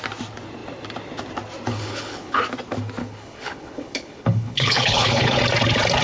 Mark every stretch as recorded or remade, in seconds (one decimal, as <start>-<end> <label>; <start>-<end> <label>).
0.0-1.7 recorded; 1.7-2.4 remade; 2.4-3.0 recorded; 3.0-5.4 remade; 5.4-6.0 recorded